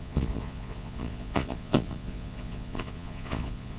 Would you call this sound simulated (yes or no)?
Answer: yes